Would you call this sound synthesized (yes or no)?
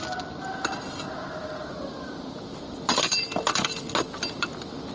no